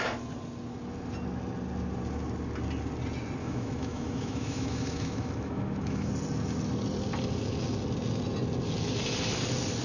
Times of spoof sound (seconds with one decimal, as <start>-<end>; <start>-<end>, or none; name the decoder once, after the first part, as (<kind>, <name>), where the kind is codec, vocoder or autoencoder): 3.4-6.1 (autoencoder, DAC-VAE)